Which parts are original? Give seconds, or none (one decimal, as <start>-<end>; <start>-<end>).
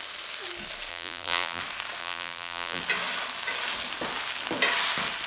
0.0-0.9; 1.6-2.0; 2.8-5.3